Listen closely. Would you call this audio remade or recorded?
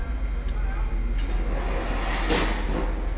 recorded